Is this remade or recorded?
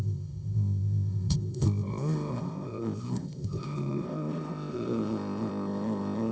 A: remade